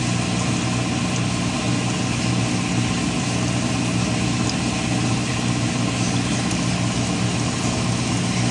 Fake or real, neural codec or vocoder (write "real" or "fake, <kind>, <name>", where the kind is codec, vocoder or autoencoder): real